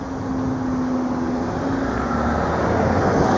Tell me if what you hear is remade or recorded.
recorded